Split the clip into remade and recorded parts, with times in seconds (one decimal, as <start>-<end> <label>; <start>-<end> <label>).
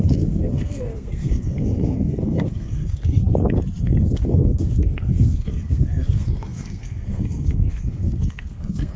0.0-3.2 remade; 3.2-3.8 recorded; 3.8-9.0 remade